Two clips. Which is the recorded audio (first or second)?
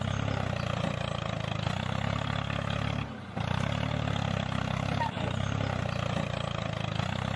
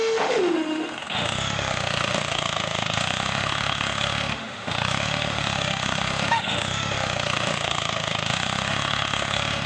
first